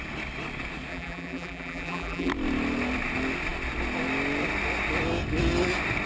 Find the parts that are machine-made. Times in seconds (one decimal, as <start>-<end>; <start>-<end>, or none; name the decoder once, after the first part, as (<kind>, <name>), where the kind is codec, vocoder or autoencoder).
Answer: 0.9-2.3 (vocoder, BigVGAN v2)